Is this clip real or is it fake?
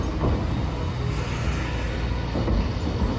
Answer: real